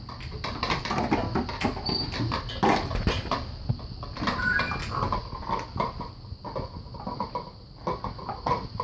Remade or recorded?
recorded